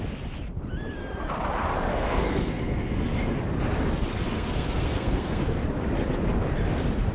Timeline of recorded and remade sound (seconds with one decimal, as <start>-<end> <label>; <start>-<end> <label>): 0.0-1.9 recorded; 1.9-3.4 remade; 3.4-4.1 recorded; 4.1-5.4 remade; 5.4-7.1 recorded